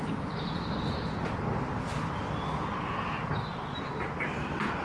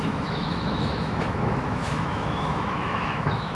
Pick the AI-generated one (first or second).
second